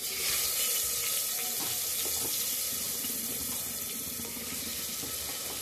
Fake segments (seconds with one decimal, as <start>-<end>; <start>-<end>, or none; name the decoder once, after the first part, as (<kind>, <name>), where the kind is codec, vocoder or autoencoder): none